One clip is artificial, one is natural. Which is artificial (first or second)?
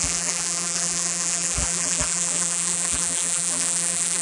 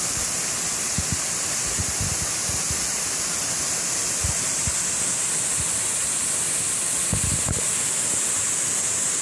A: first